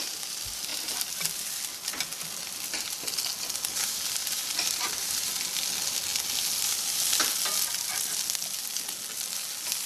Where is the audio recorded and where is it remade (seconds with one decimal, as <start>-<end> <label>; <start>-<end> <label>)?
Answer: 0.0-0.7 recorded; 0.7-1.6 remade; 1.6-4.2 recorded; 4.2-5.3 remade; 5.3-9.9 recorded